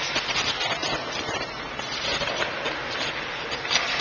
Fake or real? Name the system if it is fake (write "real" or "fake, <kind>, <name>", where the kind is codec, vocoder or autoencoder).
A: real